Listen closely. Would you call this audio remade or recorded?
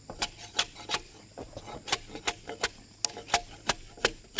recorded